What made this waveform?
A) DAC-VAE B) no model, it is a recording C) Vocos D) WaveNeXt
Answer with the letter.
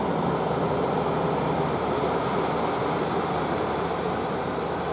B